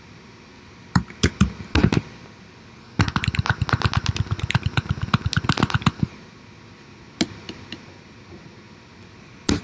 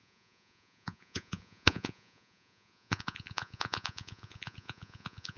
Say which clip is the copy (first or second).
second